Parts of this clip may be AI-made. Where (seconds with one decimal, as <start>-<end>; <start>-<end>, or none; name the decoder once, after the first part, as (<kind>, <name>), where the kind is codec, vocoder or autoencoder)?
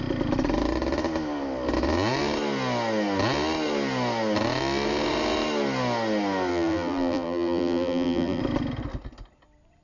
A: 6.5-8.4 (vocoder, BigVGAN v2)